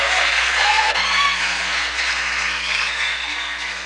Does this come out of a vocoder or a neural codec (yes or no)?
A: yes